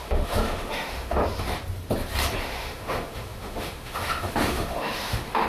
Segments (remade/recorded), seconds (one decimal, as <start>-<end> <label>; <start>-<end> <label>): 0.0-1.2 remade; 1.2-2.4 recorded; 2.4-5.5 remade